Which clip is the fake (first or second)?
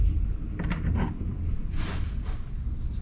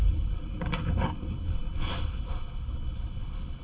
second